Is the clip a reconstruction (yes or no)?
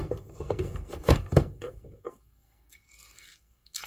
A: yes